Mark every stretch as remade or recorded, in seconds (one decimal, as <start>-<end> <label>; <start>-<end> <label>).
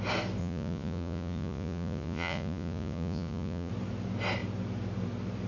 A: 0.0-0.4 recorded; 0.4-3.7 remade; 3.7-5.5 recorded